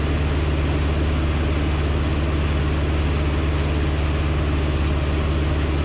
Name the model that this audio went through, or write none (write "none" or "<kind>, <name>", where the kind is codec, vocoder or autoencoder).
none